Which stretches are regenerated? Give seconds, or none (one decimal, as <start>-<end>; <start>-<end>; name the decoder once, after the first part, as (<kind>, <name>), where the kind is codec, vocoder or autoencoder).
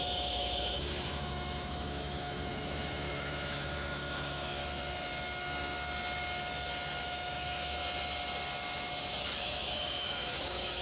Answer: 0.0-4.6 (autoencoder, DAC-VAE); 7.0-7.8; 9.4-10.8